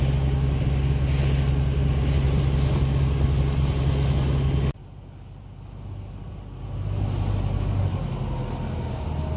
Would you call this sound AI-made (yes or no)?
no